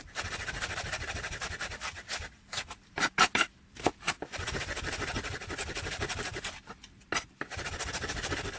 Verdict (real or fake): real